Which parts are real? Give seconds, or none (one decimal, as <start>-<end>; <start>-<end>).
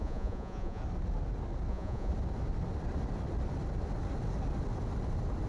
0.8-1.7; 2.1-5.5